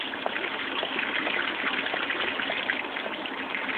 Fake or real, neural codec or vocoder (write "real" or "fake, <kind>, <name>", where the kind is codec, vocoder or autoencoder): real